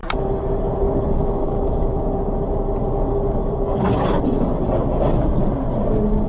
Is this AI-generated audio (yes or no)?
no